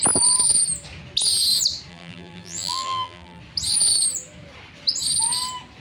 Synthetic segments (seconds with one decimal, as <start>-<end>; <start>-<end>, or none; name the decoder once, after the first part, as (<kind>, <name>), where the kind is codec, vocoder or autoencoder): 1.9-3.4 (vocoder, BigVGAN v2)